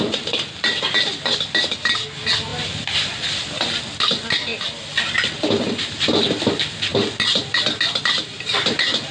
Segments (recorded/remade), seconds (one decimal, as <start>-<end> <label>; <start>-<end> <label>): 0.0-9.1 recorded